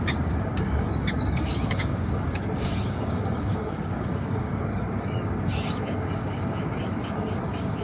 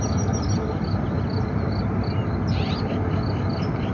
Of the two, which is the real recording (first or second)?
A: second